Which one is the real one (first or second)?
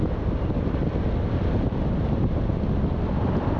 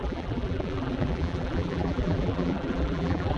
first